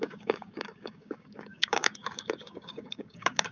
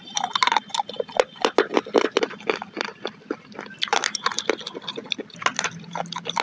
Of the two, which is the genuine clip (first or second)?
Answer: second